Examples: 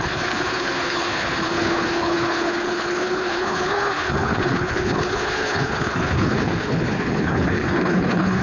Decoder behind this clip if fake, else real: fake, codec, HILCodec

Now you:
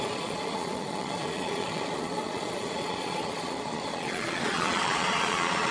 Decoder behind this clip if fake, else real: fake, vocoder, Vocos